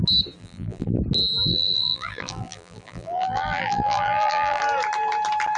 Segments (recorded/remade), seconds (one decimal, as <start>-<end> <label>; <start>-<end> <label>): 0.0-0.4 recorded; 0.4-1.0 remade; 1.0-1.5 recorded; 1.5-4.6 remade; 4.6-5.6 recorded

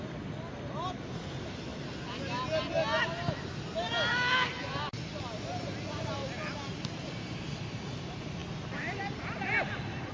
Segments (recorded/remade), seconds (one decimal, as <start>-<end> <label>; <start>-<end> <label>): 0.0-1.7 remade; 1.7-4.1 recorded; 4.1-6.2 remade; 6.2-6.7 recorded; 6.7-8.4 remade; 8.4-10.1 recorded

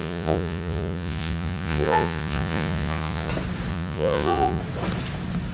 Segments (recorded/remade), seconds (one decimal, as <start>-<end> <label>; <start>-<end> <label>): 0.0-3.3 remade; 3.3-3.7 recorded; 3.7-4.6 remade; 4.6-5.5 recorded